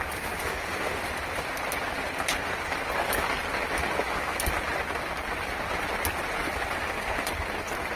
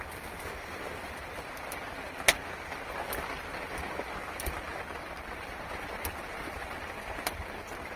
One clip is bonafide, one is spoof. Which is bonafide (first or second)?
first